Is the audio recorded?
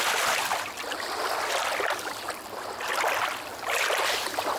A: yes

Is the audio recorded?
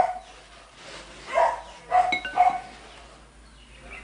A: yes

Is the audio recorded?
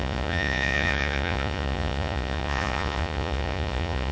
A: no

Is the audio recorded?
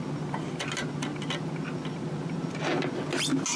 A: yes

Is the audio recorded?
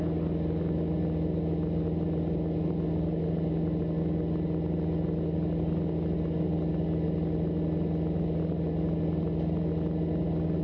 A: yes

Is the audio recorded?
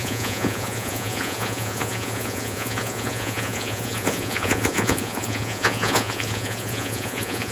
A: no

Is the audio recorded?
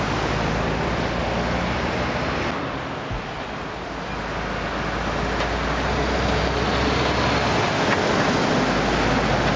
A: yes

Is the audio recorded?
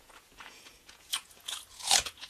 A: no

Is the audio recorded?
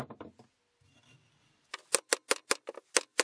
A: yes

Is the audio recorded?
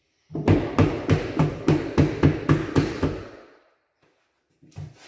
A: yes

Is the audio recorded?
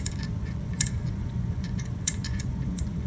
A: no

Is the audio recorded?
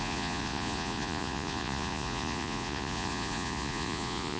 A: no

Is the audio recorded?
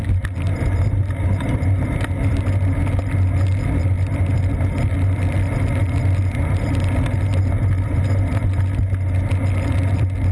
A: yes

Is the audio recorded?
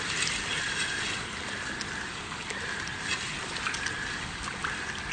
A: yes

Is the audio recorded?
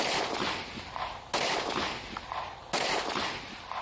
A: yes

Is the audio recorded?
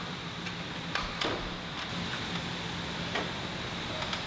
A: yes